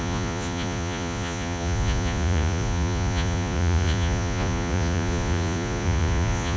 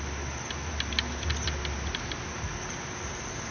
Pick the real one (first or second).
second